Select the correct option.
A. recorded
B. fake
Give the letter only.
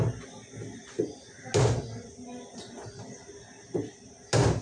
A